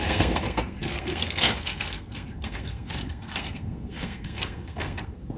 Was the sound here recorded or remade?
remade